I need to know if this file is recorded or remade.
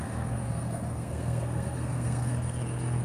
remade